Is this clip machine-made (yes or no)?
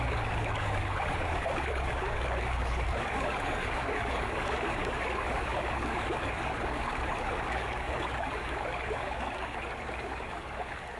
yes